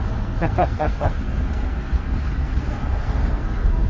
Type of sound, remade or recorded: remade